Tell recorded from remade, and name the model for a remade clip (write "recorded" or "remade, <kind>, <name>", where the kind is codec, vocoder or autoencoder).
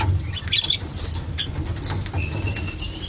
recorded